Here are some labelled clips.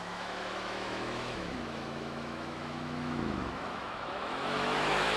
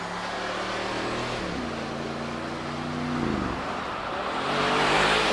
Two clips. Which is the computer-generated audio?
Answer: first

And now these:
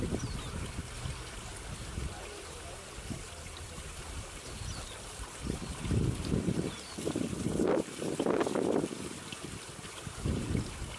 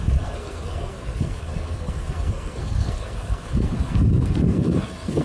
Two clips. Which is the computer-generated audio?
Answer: second